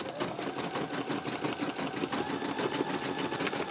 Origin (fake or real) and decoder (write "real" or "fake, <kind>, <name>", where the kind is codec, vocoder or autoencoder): real